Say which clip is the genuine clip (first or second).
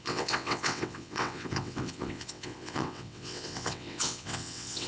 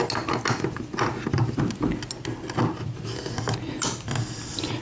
second